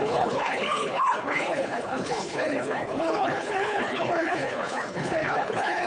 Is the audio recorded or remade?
remade